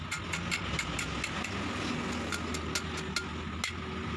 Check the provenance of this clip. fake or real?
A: real